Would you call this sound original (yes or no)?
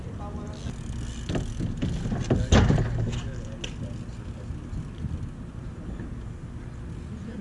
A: yes